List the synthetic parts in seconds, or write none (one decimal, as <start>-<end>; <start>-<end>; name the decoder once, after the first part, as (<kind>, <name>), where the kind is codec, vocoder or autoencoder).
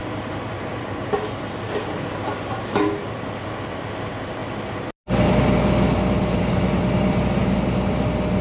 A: none